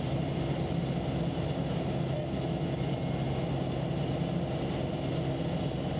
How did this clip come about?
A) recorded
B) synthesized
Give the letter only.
A